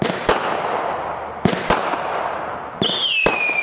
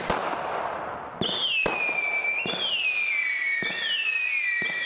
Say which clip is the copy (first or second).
first